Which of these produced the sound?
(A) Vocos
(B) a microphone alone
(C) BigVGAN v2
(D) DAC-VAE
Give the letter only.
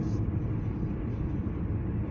B